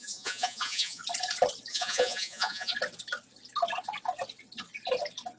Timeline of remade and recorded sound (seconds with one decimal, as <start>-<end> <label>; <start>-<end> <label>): 0.0-1.0 remade; 1.0-1.7 recorded; 1.7-2.7 remade; 2.7-5.4 recorded